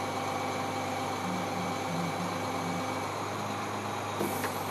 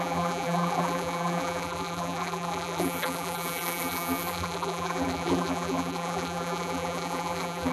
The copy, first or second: second